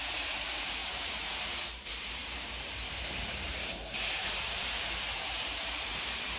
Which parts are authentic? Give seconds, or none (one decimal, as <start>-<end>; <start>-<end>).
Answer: none